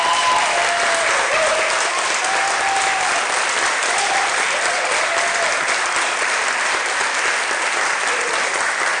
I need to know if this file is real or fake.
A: real